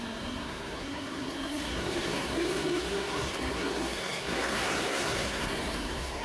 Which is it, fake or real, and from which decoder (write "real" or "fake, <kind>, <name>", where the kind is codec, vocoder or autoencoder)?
fake, codec, SNAC